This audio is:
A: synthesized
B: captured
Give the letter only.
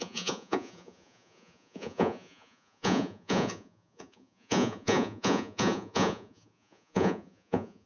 A